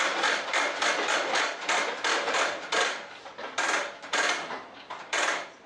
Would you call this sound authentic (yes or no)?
no